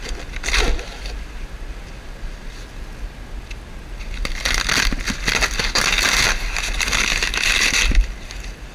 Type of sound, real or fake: real